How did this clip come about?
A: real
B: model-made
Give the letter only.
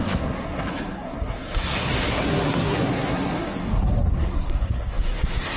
B